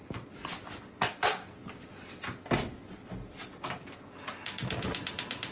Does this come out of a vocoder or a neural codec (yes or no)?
no